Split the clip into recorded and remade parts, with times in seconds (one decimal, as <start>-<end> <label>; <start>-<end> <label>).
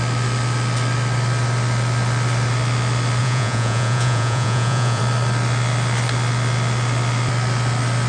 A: 0.0-3.2 recorded; 3.2-5.0 remade; 5.0-8.1 recorded